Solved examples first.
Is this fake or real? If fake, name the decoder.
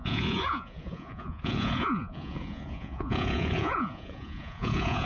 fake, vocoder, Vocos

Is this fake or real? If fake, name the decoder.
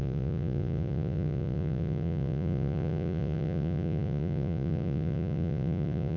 fake, vocoder, Vocos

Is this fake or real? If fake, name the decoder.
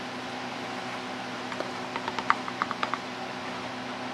real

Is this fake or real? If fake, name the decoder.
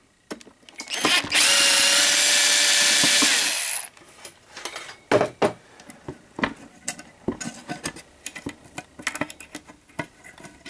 real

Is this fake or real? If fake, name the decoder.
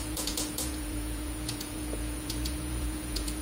fake, vocoder, Vocos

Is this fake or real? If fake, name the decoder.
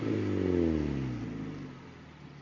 real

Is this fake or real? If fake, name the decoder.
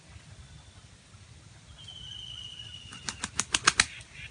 real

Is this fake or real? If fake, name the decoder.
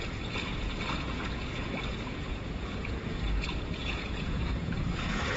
fake, vocoder, Vocos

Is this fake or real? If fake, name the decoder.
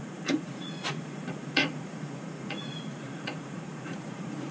fake, vocoder, Vocos